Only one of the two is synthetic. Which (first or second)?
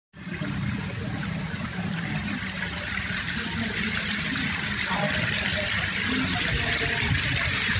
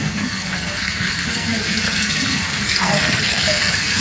second